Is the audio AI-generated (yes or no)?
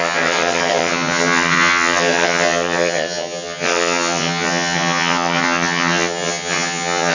yes